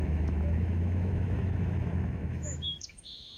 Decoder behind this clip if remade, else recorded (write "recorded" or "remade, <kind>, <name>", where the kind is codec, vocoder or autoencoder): remade, autoencoder, DAC-VAE